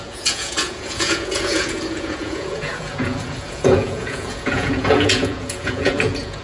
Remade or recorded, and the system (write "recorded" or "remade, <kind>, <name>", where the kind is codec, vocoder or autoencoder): remade, vocoder, Vocos